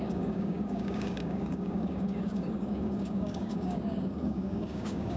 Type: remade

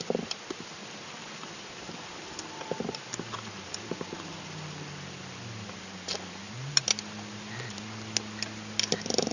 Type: recorded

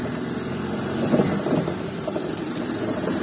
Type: recorded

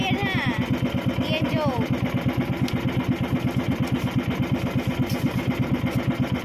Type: recorded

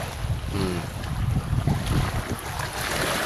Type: recorded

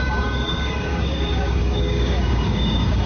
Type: remade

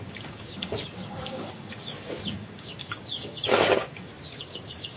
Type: remade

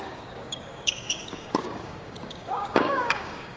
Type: remade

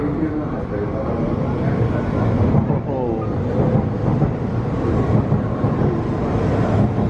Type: recorded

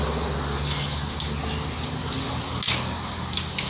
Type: recorded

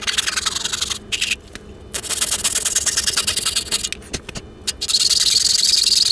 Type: recorded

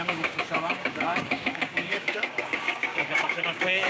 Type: remade